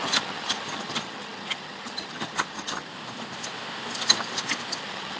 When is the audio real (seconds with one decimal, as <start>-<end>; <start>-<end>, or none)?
2.9-4.8